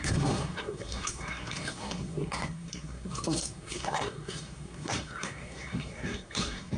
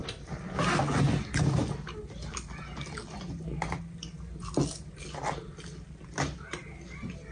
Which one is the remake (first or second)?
first